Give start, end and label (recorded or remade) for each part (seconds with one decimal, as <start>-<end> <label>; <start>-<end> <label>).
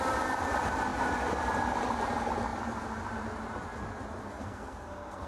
0.0-4.2 recorded; 4.2-5.3 remade